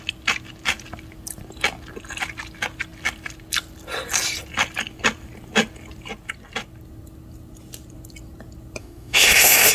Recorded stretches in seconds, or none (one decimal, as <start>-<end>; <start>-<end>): 0.0-8.8